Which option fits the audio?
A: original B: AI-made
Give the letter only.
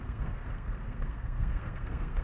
B